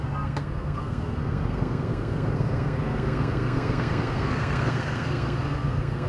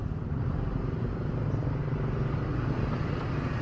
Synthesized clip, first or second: first